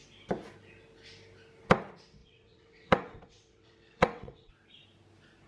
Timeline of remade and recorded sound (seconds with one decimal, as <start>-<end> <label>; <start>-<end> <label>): 0.0-2.2 recorded; 2.2-4.5 remade; 4.5-5.5 recorded